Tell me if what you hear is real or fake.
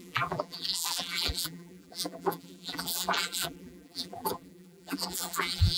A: fake